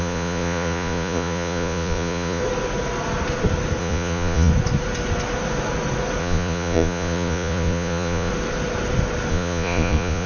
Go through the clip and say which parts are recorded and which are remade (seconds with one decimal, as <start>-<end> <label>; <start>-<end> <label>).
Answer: 0.0-2.4 remade; 2.4-3.8 recorded; 3.8-4.5 remade; 4.5-6.2 recorded; 6.2-8.3 remade; 8.3-9.3 recorded; 9.3-10.3 remade